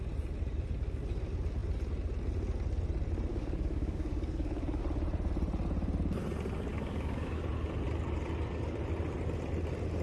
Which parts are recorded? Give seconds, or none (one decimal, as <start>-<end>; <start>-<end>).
0.0-3.3; 4.8-6.7; 7.4-10.0